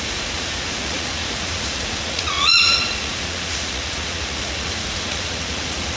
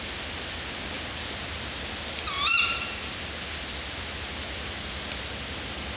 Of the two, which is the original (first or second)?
second